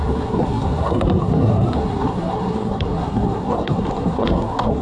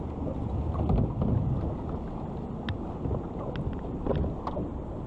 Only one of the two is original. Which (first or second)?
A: second